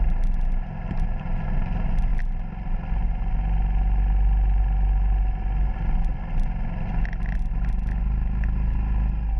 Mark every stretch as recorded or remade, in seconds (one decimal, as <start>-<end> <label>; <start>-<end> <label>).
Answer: 0.0-9.4 recorded